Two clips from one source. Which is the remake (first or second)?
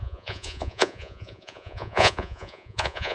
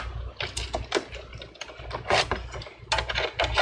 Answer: first